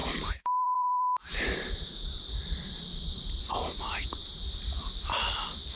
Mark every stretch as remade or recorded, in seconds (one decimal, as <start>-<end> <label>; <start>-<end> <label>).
0.0-3.5 remade; 3.5-4.2 recorded; 4.2-4.9 remade; 4.9-5.8 recorded